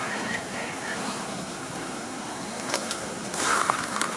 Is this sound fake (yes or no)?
yes